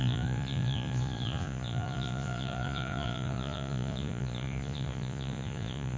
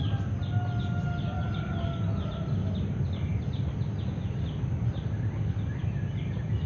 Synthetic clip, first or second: first